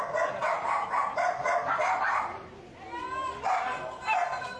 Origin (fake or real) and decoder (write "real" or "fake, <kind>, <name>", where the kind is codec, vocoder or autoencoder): real